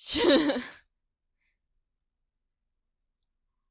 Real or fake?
real